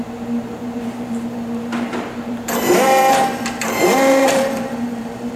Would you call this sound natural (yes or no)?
no